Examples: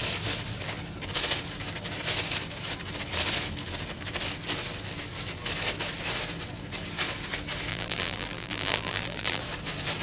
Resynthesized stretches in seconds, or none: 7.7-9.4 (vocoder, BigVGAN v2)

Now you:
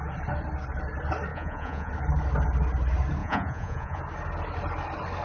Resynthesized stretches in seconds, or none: 1.3-1.9 (vocoder, Vocos); 3.2-4.0

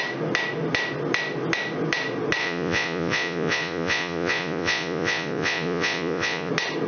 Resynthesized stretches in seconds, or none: 2.4-6.5 (vocoder, Vocos)

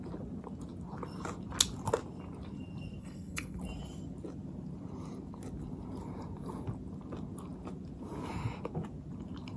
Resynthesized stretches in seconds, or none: 3.0-3.6 (codec, SNAC)